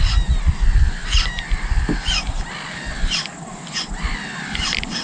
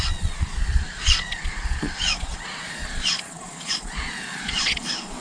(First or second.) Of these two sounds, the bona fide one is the first